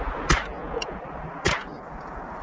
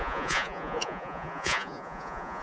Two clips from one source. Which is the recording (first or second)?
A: first